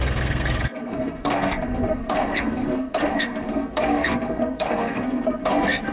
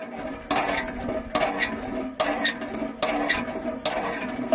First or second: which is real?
second